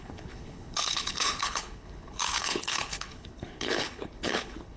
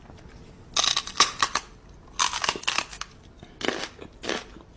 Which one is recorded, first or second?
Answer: second